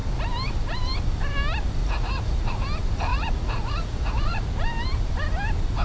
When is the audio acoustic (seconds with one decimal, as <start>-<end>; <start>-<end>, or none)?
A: 0.0-1.8; 2.6-3.1; 4.5-5.8